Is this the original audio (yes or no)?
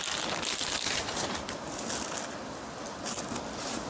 yes